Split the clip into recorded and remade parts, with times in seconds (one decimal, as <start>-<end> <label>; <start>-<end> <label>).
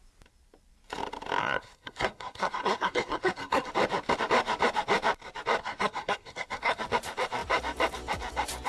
0.0-1.4 recorded; 1.4-3.7 remade; 3.7-5.6 recorded; 5.6-6.8 remade; 6.8-8.7 recorded